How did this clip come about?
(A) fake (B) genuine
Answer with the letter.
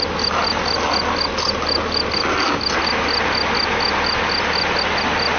B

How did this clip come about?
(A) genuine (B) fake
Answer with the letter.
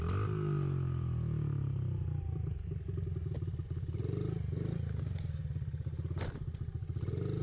A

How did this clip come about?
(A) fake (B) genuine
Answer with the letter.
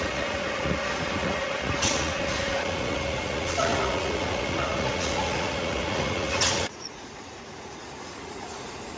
A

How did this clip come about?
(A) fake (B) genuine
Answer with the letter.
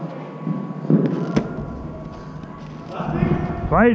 B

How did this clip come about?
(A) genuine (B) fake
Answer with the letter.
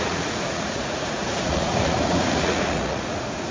B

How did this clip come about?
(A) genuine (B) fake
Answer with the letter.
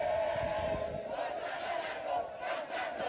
A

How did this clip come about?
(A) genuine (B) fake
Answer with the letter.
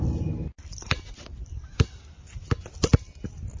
A